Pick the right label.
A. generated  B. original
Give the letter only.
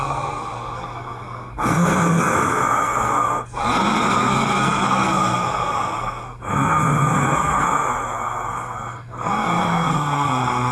A